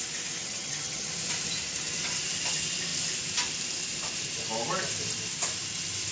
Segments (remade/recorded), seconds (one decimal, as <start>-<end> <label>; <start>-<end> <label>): 0.0-0.4 recorded; 0.4-1.1 remade; 1.1-6.1 recorded